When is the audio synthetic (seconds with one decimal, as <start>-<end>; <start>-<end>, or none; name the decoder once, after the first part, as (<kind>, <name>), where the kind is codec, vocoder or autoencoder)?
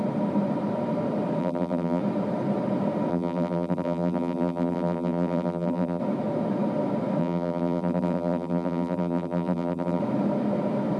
1.4-2.0 (vocoder, BigVGAN v2); 3.1-6.0; 7.2-10.0